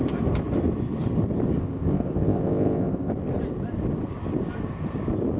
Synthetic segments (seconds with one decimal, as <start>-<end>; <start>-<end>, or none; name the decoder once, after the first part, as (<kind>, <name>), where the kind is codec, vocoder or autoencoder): 1.6-3.1 (codec, ZipCodec)